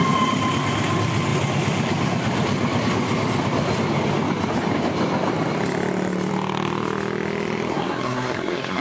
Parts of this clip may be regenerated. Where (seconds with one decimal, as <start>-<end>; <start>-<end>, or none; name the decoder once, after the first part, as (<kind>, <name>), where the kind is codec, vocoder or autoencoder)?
7.7-8.8 (codec, SNAC)